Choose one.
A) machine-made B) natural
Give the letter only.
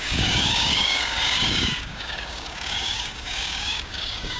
A